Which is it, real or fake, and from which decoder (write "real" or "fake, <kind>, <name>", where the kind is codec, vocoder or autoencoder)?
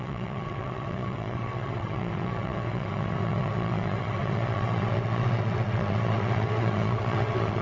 fake, vocoder, WaveNeXt